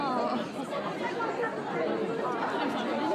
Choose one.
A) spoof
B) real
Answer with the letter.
B